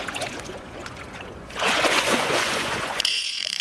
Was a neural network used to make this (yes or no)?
yes